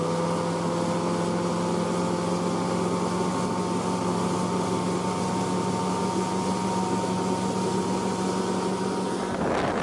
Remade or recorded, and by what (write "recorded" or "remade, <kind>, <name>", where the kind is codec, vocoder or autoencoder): recorded